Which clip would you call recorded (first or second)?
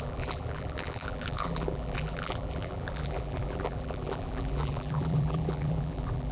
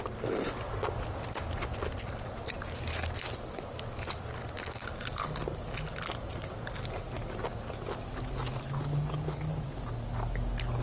second